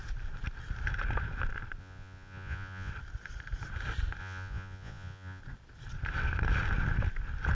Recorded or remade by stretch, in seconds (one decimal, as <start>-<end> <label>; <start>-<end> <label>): 0.0-1.8 recorded; 1.8-2.9 remade; 2.9-4.2 recorded; 4.2-5.4 remade; 5.4-7.5 recorded